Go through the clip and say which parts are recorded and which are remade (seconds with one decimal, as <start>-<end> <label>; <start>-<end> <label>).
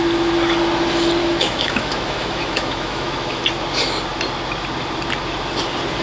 0.0-1.2 recorded; 1.2-3.4 remade; 3.4-6.0 recorded